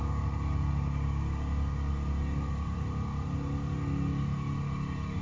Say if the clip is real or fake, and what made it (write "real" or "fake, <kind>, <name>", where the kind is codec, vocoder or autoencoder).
real